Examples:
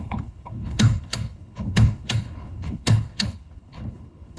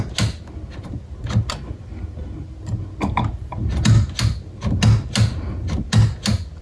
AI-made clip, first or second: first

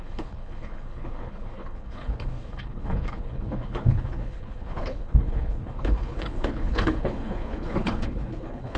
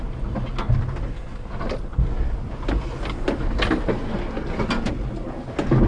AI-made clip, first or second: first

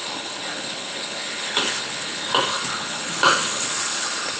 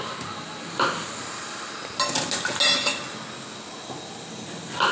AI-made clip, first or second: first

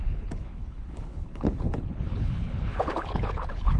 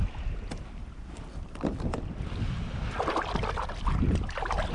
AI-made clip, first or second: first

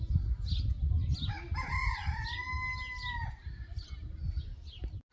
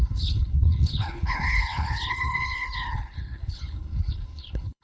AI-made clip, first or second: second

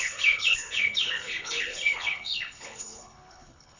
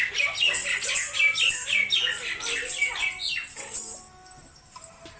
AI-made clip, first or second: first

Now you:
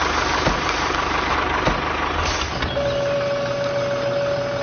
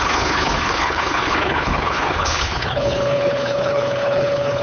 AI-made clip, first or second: second